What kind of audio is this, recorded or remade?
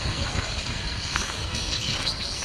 remade